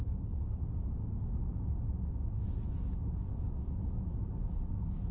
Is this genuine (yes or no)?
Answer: yes